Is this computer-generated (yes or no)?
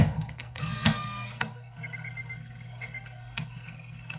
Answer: yes